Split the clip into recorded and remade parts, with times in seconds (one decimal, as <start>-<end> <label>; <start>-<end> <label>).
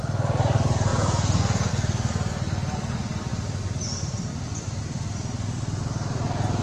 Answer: 0.0-0.9 recorded; 0.9-1.7 remade; 1.7-6.6 recorded